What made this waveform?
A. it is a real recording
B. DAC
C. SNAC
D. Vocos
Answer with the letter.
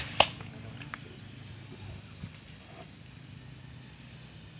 A